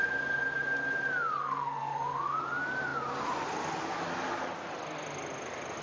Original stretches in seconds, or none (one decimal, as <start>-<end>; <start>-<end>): 0.0-1.4; 2.4-5.8